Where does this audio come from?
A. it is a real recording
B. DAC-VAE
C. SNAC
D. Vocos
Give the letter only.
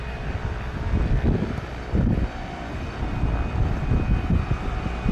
A